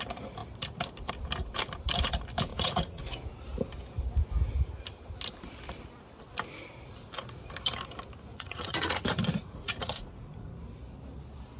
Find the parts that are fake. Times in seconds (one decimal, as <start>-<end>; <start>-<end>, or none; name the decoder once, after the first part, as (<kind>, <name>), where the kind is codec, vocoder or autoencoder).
2.5-3.0 (vocoder, Vocos); 8.3-9.0; 9.4-10.5